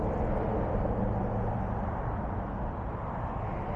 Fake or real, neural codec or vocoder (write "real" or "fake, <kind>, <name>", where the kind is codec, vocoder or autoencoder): real